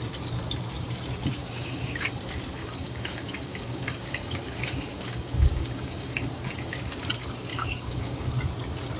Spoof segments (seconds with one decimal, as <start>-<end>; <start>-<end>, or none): 1.4-2.1; 2.6-6.8; 7.5-8.3